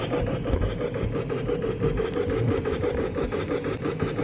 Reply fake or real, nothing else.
real